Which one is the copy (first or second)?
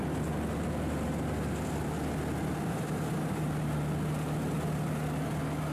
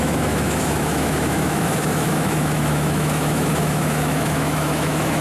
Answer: second